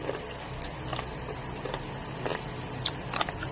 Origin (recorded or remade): recorded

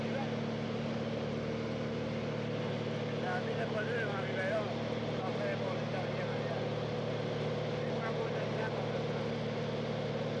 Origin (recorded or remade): recorded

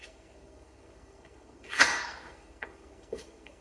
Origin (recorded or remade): remade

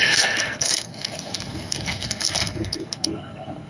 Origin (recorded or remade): remade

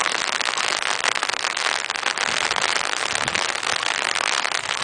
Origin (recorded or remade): recorded